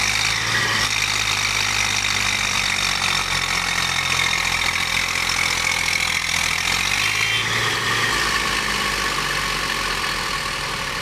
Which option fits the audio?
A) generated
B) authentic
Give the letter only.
B